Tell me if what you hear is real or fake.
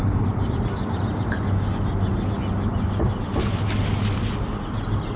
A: real